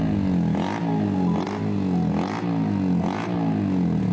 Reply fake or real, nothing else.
real